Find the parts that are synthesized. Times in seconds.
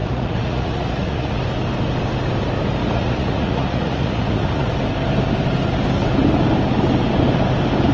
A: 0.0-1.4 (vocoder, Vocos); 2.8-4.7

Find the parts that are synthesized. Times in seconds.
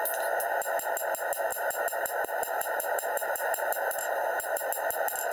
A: 1.5-4.7 (vocoder, BigVGAN v2)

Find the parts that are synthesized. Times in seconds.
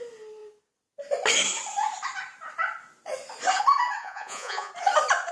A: 4.0-4.7 (vocoder, Vocos)